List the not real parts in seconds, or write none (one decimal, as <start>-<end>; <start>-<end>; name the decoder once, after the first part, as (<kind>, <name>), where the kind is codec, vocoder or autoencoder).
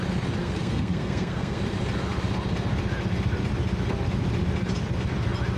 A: 0.4-1.6 (codec, SNAC)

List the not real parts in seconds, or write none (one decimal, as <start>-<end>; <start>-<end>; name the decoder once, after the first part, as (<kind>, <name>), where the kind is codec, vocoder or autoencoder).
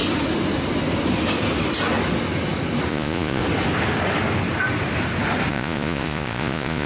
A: 2.9-3.4 (vocoder, Vocos); 5.5-6.9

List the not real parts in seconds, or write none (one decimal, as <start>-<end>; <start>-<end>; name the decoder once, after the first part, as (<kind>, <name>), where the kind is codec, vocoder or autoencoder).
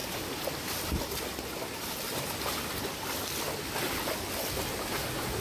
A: 0.0-1.1 (vocoder, BigVGAN v2)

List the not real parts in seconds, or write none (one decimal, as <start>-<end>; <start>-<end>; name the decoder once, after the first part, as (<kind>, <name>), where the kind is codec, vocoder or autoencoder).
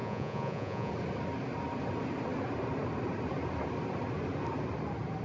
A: 0.0-0.9 (vocoder, Vocos)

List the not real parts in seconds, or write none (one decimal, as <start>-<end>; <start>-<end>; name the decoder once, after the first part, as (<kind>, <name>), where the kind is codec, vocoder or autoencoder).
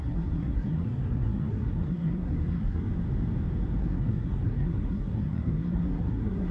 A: 0.0-2.9 (codec, SNAC); 3.8-6.5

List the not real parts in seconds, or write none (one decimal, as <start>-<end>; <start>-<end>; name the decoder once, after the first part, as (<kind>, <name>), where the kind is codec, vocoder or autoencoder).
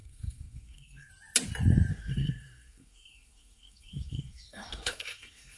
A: 0.0-1.1 (codec, SNAC); 1.9-5.6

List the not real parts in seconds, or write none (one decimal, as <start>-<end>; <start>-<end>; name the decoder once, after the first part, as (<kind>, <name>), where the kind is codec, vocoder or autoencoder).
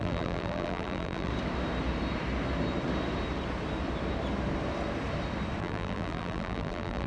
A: 0.0-1.3 (vocoder, BigVGAN v2); 5.6-7.1